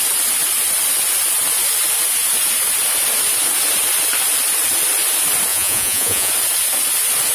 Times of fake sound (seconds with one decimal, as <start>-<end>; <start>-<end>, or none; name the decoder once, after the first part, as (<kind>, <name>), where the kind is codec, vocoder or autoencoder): 5.5-6.3 (vocoder, Vocos)